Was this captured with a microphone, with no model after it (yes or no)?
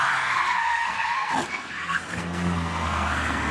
no